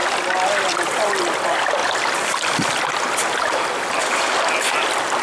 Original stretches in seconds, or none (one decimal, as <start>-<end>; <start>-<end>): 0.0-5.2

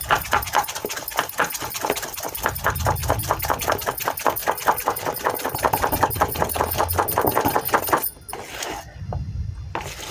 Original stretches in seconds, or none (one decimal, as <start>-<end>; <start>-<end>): 0.0-10.1

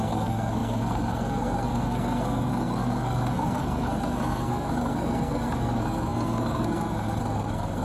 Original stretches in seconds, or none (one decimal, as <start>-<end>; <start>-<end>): none